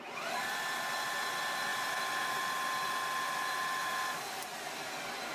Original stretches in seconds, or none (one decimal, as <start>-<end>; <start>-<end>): 0.0-1.7; 4.6-5.3